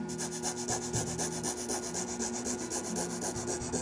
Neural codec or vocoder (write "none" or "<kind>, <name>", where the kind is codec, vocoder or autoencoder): none